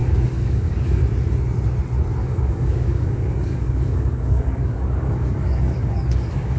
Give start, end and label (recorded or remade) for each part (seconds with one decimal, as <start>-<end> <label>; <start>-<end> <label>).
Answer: 0.0-1.0 remade; 1.0-2.2 recorded; 2.2-6.6 remade